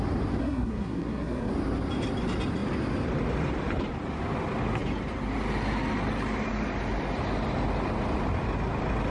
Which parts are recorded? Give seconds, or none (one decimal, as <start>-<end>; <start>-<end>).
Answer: 0.0-0.4; 1.5-9.1